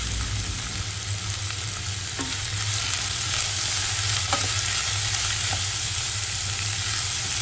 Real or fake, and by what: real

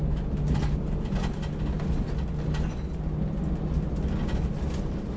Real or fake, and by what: real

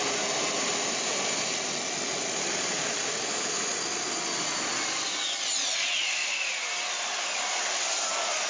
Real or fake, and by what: real